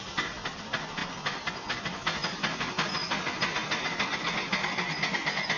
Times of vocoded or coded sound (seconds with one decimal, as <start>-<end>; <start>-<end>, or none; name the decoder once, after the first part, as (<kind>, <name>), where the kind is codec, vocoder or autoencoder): none